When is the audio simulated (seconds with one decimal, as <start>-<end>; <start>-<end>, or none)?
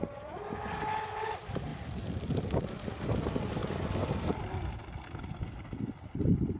none